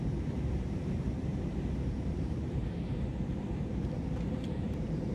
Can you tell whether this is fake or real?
fake